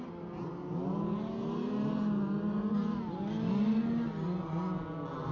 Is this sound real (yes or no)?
yes